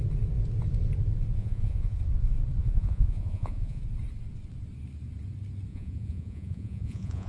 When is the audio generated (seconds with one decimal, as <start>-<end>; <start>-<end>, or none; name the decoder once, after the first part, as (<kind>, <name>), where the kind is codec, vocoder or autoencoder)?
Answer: 1.4-2.0 (vocoder, Vocos); 2.6-3.8; 5.7-7.3